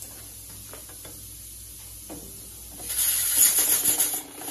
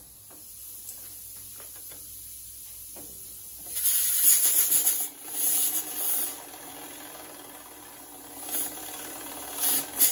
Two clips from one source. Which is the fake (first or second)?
second